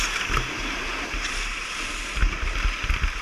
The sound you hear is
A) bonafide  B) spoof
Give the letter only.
A